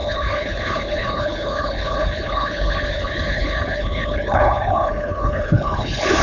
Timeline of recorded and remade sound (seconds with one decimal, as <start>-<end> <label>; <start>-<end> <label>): 0.0-6.2 remade